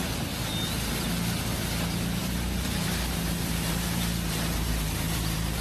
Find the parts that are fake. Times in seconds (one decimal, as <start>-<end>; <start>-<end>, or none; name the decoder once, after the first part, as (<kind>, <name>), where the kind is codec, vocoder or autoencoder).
2.2-5.6 (vocoder, BigVGAN v2)